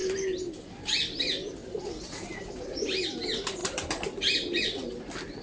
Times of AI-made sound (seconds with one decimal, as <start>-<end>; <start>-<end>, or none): none